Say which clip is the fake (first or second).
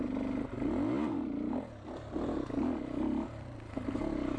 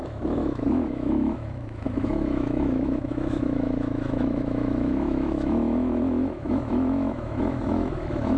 second